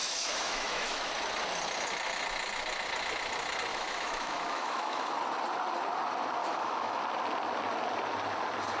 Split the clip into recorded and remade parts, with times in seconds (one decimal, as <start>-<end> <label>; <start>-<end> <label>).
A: 0.0-1.1 remade; 1.1-3.7 recorded; 3.7-5.1 remade; 5.1-6.4 recorded; 6.4-7.0 remade; 7.0-8.8 recorded